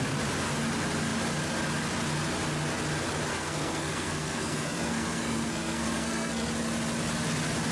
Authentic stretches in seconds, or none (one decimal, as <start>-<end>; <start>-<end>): 0.0-3.3; 6.5-7.7